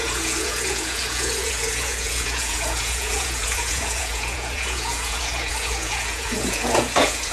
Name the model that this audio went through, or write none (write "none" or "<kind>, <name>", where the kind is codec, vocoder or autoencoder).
vocoder, Vocos